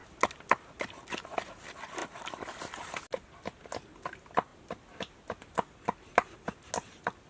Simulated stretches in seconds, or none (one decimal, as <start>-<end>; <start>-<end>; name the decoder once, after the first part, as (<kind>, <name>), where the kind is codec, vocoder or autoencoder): 2.0-2.7 (vocoder, BigVGAN v2)